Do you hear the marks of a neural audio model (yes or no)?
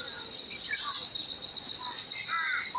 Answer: no